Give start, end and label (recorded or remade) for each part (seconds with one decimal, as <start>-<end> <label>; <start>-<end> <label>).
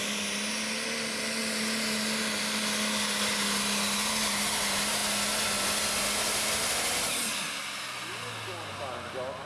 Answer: 0.0-9.5 recorded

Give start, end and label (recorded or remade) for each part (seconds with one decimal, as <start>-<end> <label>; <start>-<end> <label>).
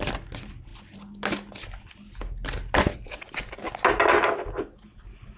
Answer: 0.0-5.4 recorded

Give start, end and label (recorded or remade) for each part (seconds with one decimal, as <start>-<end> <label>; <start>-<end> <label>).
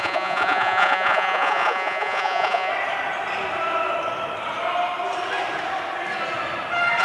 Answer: 0.0-2.7 remade; 2.7-7.0 recorded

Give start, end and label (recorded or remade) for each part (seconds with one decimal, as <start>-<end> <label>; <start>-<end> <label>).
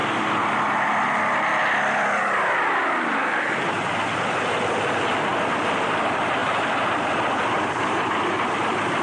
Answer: 0.0-9.0 recorded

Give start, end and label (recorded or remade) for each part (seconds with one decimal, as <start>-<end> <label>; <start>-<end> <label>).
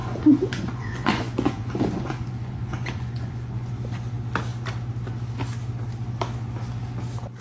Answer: 0.0-3.7 remade; 3.7-7.4 recorded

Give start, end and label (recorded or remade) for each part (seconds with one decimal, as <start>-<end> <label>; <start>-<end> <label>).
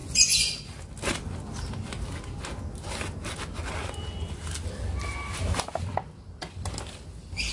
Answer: 0.0-0.6 remade; 0.6-7.5 recorded